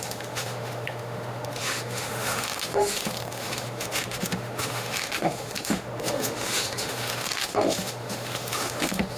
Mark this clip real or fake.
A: fake